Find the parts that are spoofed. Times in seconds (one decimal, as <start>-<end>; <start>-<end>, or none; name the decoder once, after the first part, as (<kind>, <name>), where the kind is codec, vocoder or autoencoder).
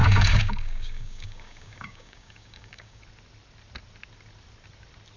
0.0-3.0 (codec, DAC)